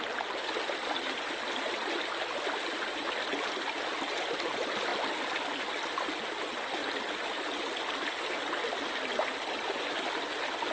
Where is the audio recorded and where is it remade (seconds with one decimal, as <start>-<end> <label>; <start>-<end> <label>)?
0.0-10.7 recorded